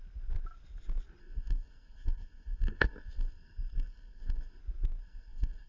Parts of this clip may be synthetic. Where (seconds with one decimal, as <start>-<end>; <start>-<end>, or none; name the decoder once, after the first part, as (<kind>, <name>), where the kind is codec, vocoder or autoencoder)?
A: 1.2-4.6 (codec, SNAC); 5.0-5.7

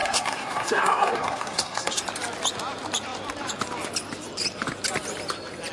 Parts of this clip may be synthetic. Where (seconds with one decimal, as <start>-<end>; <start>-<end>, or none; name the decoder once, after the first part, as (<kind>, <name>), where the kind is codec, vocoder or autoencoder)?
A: 0.0-2.0 (codec, SNAC)

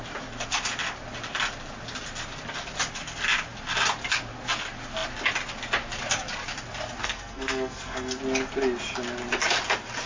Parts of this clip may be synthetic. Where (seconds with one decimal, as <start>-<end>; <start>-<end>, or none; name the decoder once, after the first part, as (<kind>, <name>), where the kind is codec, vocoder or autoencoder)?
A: 7.0-8.2 (codec, SNAC)

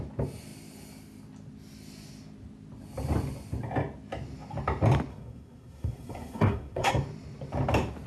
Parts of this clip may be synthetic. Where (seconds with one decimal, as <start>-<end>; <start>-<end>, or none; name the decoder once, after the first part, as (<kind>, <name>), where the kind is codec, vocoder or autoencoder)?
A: 5.1-6.9 (codec, SNAC)

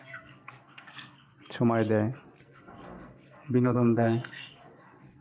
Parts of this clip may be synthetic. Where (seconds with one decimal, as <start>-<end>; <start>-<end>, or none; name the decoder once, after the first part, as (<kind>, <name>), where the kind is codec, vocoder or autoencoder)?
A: 0.0-1.3 (codec, SNAC); 2.4-5.2